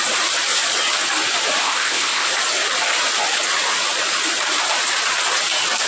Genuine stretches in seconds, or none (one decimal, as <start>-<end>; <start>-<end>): 0.0-1.6; 2.3-5.9